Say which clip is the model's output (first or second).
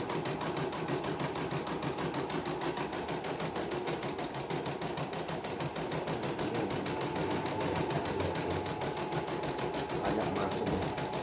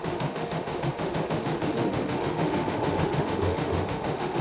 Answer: second